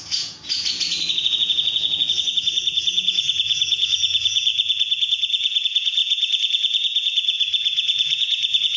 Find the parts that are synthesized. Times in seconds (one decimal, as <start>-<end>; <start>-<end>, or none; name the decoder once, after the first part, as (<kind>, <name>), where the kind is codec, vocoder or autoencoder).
0.0-8.8 (vocoder, Vocos)